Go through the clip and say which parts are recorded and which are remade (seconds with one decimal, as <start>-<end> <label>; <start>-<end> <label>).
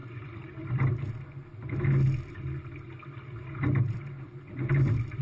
0.0-0.8 remade; 0.8-5.2 recorded